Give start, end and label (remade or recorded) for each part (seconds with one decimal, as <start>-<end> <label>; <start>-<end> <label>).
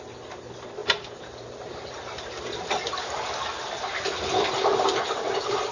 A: 0.0-5.7 recorded